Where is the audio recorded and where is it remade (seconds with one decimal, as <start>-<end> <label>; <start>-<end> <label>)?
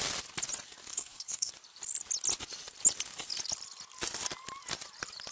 0.0-0.9 recorded; 0.9-1.5 remade; 1.5-5.3 recorded